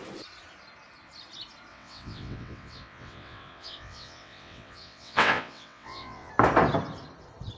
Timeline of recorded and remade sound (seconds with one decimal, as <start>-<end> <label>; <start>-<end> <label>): 0.0-1.7 recorded; 1.7-6.3 remade; 6.3-7.6 recorded